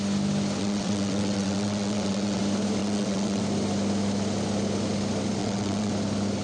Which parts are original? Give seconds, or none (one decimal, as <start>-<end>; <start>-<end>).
0.0-0.6; 2.4-2.8; 3.4-5.4; 5.9-6.4